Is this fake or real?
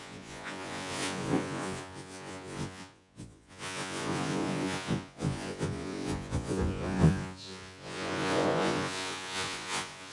fake